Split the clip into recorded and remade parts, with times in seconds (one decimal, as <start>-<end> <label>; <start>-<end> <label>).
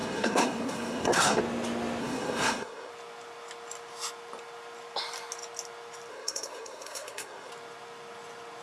0.0-1.4 remade; 1.4-2.0 recorded; 2.0-2.9 remade; 2.9-6.1 recorded; 6.1-7.5 remade; 7.5-8.6 recorded